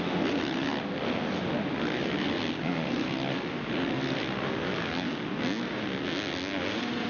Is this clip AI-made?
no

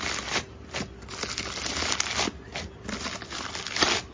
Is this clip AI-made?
no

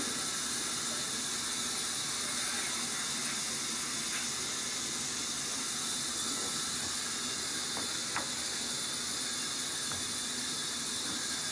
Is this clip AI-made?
no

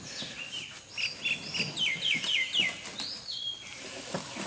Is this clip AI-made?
no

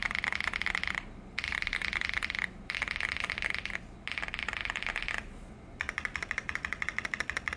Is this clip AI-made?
no